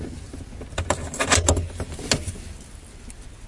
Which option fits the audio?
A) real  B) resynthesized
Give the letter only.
A